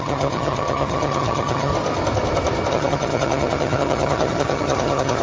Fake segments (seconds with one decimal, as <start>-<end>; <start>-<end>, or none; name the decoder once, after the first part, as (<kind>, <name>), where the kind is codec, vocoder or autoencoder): 0.0-1.7 (vocoder, HiFi-GAN); 2.7-5.2